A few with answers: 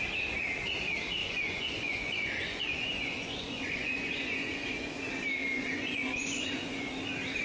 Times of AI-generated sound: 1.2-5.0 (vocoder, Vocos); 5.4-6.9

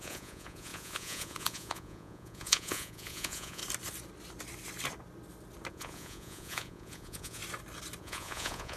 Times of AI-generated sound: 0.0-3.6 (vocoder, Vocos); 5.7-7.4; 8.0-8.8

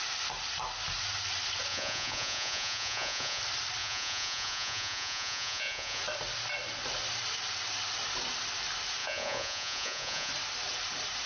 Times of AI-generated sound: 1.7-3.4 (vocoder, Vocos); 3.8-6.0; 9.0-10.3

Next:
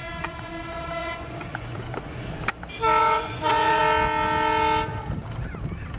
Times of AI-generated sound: 0.0-0.5 (vocoder, Vocos); 1.0-2.4; 3.0-3.8